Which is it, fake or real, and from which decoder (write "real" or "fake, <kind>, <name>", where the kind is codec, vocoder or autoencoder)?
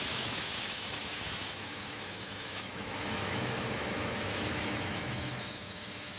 fake, autoencoder, DAC-VAE